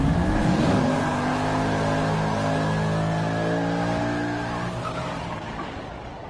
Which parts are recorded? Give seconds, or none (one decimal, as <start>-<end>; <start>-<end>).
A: 1.3-5.1